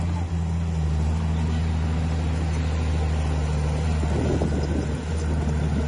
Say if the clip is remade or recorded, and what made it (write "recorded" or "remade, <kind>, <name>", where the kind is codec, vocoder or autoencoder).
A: recorded